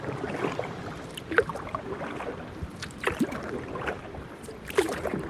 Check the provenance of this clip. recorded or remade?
remade